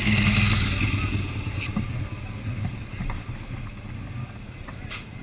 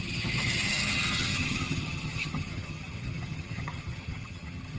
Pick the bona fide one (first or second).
first